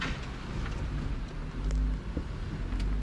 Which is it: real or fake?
real